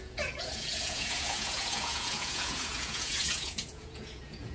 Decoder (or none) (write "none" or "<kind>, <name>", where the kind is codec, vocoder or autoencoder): vocoder, Vocos